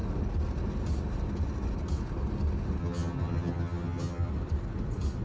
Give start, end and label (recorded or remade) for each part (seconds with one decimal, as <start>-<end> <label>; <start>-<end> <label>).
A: 0.0-2.8 recorded; 2.8-4.3 remade; 4.3-5.2 recorded